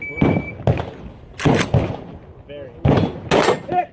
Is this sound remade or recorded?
recorded